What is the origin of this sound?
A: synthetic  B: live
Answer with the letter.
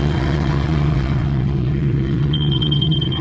A